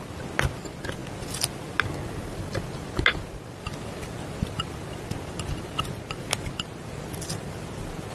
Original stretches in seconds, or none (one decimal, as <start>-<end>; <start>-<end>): 0.0-8.1

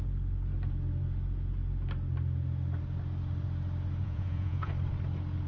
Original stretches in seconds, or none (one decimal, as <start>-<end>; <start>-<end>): 0.0-4.0; 4.7-5.5

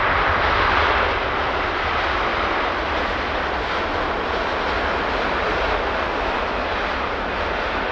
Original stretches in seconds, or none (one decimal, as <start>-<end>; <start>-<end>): 0.0-7.9

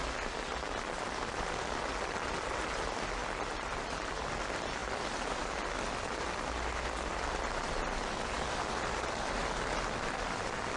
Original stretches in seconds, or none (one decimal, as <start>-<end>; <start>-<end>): 0.0-10.8

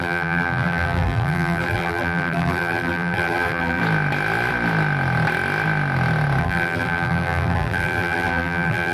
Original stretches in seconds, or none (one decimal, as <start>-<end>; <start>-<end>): 3.8-6.4